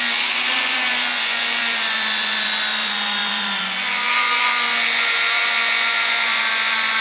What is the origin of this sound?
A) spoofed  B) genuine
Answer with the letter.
A